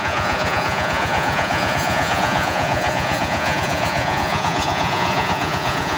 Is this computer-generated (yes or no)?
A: yes